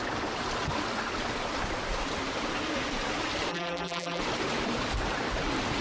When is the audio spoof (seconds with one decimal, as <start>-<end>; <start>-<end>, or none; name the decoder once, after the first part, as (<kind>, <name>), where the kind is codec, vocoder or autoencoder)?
3.5-4.2 (vocoder, BigVGAN v2)